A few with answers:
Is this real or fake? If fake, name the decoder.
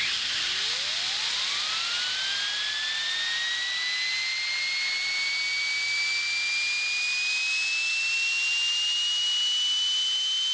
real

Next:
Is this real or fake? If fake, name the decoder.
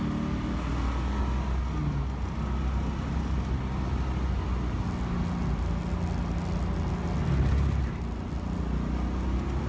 real